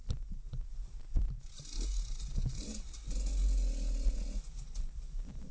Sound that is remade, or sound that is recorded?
recorded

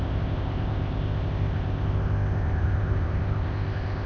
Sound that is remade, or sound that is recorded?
remade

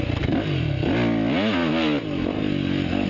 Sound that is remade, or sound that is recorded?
recorded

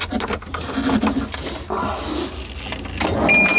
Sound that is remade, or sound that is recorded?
recorded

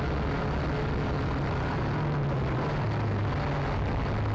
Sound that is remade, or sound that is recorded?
recorded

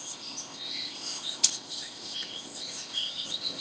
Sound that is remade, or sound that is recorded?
remade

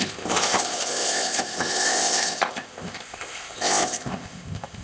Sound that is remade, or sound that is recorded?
remade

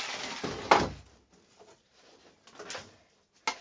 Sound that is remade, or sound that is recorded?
recorded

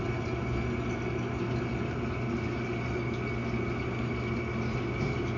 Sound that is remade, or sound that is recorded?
recorded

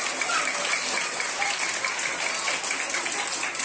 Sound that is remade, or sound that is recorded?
recorded